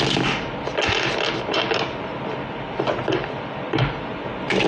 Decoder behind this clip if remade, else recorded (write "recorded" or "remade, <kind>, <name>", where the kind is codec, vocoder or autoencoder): recorded